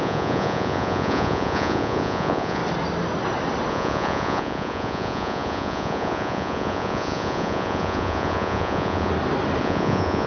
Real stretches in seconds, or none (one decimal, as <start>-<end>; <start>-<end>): 2.6-3.7; 9.1-9.6